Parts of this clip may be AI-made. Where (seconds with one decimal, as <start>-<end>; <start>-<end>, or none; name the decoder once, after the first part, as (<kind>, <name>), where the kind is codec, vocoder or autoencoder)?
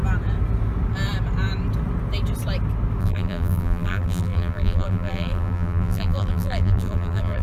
3.0-7.4 (vocoder, BigVGAN v2)